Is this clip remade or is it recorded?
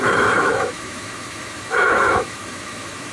remade